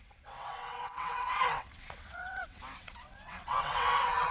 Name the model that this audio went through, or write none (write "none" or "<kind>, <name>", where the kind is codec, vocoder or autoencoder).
vocoder, WaveNeXt